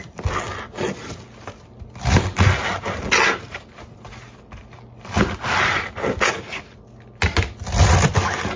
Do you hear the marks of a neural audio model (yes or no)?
no